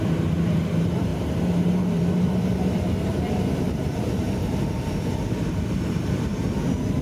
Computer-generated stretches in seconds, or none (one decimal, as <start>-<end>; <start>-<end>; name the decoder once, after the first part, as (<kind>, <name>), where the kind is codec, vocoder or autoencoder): 0.0-6.3 (vocoder, BigVGAN v2)